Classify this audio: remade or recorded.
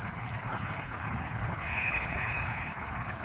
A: remade